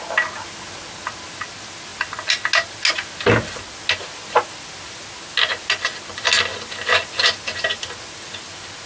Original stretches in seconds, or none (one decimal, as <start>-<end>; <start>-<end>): 0.0-8.9